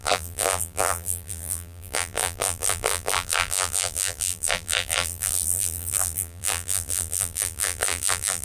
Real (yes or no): no